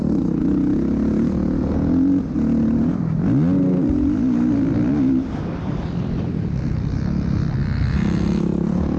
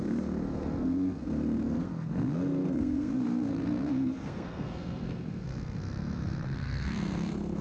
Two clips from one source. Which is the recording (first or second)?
first